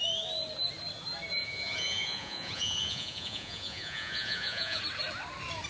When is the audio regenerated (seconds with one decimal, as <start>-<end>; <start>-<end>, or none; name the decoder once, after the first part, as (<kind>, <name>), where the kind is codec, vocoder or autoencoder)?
1.4-4.8 (vocoder, Vocos)